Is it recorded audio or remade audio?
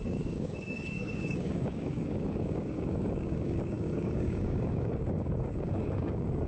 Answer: remade